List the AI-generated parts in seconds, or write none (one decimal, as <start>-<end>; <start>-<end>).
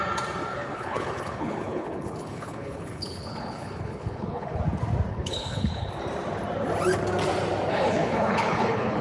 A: 0.5-4.6; 5.1-5.9; 7.7-9.0